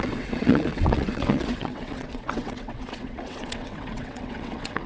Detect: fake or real fake